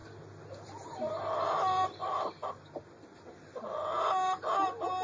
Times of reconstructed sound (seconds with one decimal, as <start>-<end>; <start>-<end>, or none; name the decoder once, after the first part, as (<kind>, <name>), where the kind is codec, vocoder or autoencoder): none